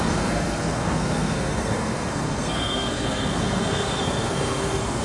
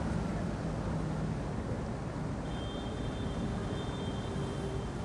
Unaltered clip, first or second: second